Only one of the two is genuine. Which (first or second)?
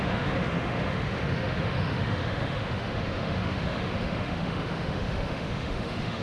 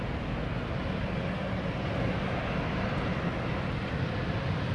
second